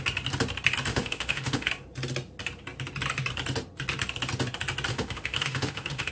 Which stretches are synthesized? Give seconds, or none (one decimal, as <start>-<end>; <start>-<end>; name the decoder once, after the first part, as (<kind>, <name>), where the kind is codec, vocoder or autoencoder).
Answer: 0.9-1.7 (autoencoder, DAC-VAE); 4.9-6.1